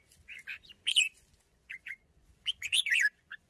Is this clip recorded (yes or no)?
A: no